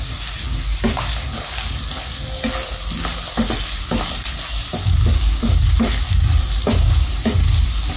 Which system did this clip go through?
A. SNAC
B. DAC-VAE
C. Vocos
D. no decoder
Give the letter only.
D